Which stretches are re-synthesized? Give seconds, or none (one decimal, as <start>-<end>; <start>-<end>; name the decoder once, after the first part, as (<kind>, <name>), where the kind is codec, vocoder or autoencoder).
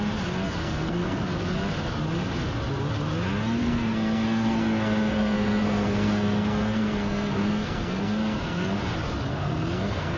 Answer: 0.6-1.2 (codec, SNAC); 3.6-8.8; 9.3-10.2